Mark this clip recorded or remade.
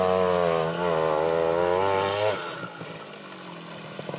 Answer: recorded